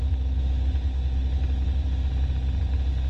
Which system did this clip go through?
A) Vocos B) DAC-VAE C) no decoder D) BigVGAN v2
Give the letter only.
C